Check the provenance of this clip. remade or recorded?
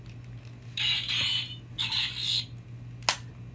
recorded